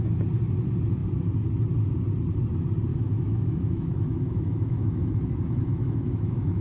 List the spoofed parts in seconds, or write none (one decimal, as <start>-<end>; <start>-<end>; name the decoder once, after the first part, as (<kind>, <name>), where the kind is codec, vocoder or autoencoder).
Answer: 2.9-6.6 (autoencoder, DAC-VAE)